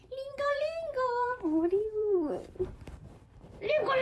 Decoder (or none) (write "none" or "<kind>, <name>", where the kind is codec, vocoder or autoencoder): vocoder, BigVGAN v2